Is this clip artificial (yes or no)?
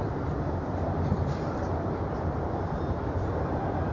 yes